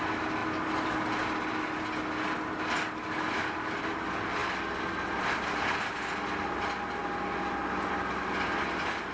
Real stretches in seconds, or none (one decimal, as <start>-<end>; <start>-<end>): 0.0-9.1